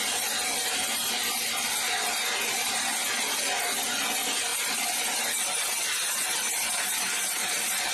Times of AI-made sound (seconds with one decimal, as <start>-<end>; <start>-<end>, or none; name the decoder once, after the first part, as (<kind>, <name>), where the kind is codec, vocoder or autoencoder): none